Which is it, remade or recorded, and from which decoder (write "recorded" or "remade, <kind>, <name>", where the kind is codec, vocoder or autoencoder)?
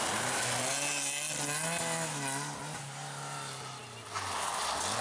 recorded